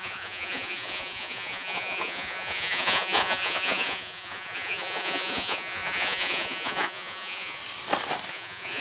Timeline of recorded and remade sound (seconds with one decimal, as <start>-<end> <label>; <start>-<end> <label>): 0.0-7.6 remade; 7.6-8.3 recorded; 8.3-8.8 remade